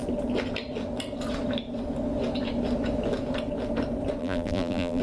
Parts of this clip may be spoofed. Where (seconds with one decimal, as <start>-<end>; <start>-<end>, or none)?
4.2-5.0